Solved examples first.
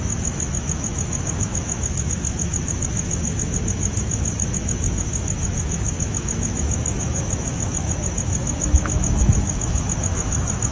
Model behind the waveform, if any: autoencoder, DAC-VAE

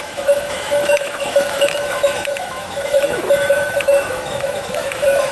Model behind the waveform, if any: autoencoder, DAC-VAE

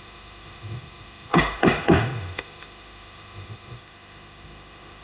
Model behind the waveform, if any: autoencoder, DAC-VAE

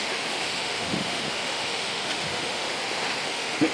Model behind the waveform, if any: autoencoder, DAC-VAE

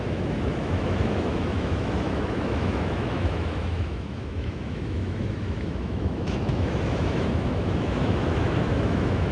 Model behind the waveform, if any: autoencoder, DAC-VAE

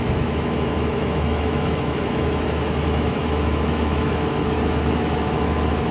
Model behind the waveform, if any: autoencoder, DAC-VAE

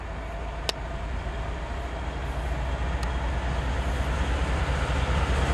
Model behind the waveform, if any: none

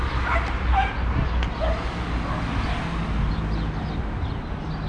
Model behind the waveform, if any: none